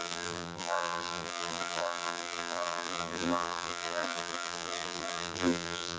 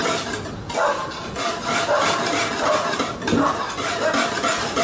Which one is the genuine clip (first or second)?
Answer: second